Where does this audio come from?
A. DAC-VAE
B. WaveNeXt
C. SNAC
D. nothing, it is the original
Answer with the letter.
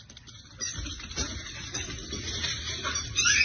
D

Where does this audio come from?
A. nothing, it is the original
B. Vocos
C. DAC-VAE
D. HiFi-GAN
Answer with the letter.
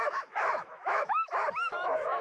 C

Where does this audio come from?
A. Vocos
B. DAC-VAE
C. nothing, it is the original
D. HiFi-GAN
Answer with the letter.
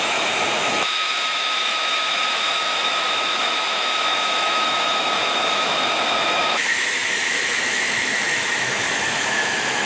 B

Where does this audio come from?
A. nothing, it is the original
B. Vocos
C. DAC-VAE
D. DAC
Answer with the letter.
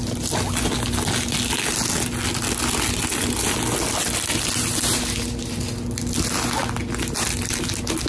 A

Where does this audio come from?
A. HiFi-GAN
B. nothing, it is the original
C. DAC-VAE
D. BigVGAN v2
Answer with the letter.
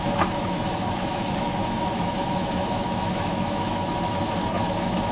C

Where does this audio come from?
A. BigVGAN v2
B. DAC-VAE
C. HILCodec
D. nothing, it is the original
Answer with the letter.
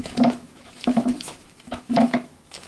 B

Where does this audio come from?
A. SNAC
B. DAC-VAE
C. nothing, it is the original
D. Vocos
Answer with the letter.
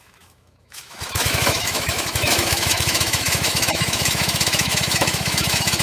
B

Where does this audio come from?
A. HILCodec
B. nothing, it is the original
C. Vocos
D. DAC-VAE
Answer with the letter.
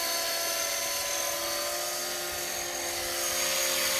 B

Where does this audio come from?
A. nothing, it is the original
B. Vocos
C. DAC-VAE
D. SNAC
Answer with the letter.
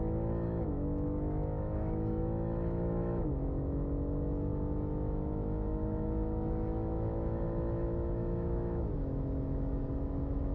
C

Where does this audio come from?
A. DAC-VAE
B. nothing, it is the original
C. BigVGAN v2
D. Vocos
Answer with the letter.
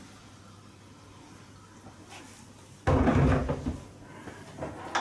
B